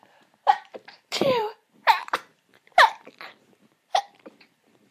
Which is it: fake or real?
fake